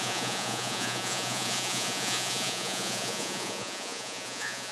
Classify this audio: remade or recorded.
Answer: remade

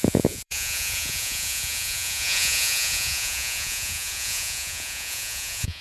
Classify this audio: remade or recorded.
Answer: remade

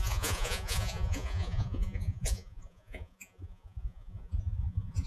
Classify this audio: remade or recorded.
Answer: remade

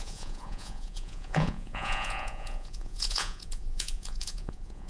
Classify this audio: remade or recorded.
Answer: remade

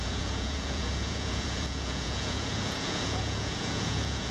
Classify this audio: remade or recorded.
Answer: remade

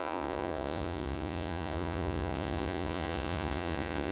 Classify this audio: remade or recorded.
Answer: remade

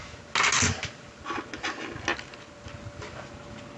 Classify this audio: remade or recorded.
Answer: recorded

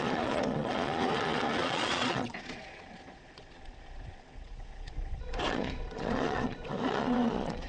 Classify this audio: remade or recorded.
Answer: remade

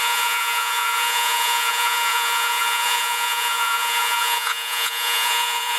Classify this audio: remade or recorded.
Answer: remade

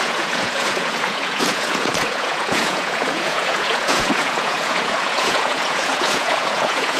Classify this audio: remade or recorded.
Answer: remade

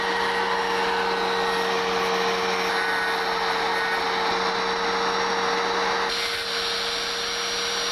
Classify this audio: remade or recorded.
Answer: recorded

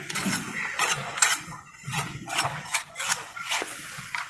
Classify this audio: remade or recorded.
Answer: remade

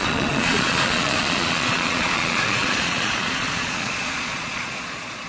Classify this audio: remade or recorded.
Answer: remade